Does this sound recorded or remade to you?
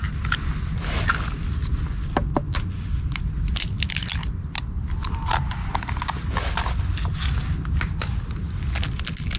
recorded